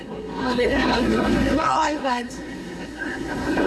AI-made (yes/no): yes